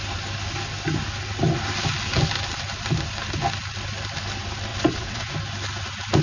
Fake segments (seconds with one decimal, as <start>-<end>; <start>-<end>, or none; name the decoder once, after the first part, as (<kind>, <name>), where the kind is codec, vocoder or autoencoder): 4.7-5.3 (vocoder, WaveNeXt)